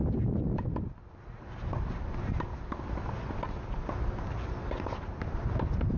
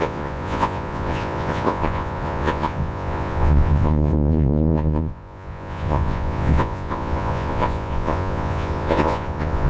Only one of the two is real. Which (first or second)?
first